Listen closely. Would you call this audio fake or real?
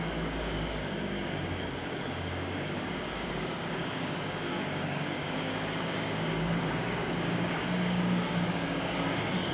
fake